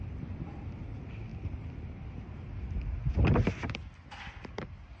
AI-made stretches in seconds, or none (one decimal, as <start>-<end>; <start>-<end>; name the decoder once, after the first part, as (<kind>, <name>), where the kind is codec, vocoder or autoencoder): none